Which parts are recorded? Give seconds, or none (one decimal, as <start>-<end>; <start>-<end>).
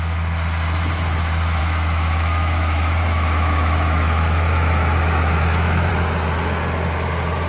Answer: 0.0-1.6; 5.9-7.5